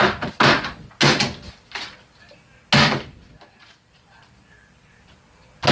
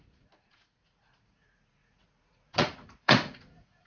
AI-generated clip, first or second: second